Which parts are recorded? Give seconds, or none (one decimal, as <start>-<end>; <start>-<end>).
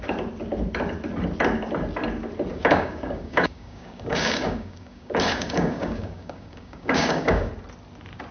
0.0-2.5; 7.5-8.3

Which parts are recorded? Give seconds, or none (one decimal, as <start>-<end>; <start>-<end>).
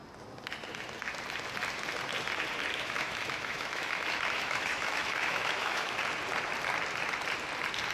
0.0-2.7; 6.0-7.9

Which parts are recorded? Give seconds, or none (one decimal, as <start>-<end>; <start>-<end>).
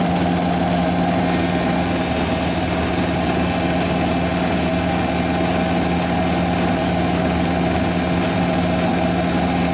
0.0-9.7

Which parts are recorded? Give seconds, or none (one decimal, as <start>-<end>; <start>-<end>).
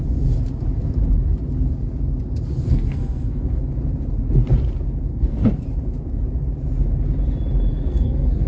0.0-2.7; 3.6-5.1; 5.6-7.7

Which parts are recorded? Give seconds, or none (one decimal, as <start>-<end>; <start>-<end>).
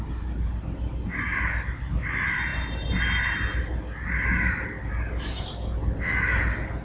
0.0-6.8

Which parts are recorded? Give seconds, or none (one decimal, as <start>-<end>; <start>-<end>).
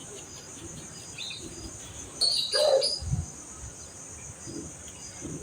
3.2-5.4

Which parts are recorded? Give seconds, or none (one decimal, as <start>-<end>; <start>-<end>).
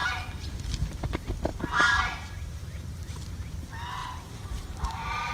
0.0-1.5; 3.5-4.0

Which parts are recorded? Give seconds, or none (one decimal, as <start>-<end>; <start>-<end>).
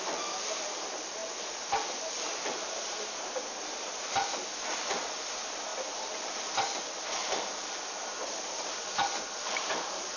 none